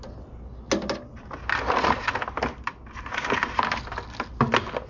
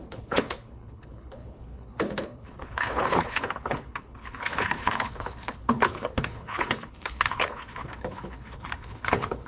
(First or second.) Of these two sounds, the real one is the first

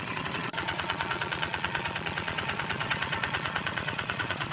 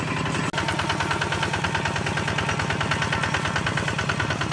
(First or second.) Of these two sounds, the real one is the second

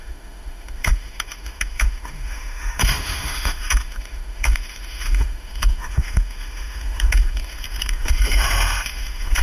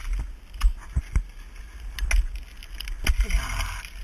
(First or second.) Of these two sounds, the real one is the second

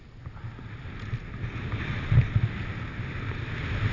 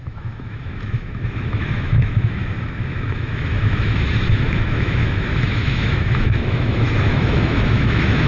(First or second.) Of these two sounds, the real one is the first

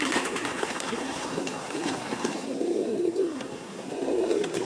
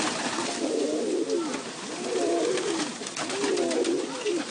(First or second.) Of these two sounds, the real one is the second